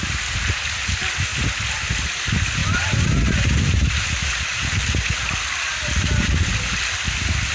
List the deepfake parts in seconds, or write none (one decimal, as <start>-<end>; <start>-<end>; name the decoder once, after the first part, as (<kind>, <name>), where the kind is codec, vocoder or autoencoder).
2.6-5.1 (vocoder, BigVGAN v2)